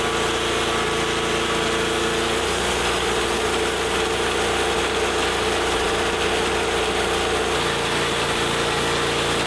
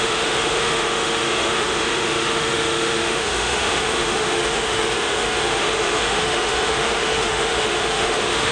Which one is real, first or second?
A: first